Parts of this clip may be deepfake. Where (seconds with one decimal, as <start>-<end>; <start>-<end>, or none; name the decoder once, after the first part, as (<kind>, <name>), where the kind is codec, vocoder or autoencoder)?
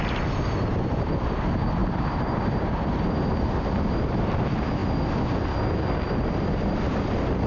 1.8-2.7 (vocoder, BigVGAN v2)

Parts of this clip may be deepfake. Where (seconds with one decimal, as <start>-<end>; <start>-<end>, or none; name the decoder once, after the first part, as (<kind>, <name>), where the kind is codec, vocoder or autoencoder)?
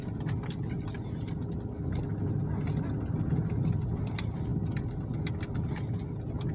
none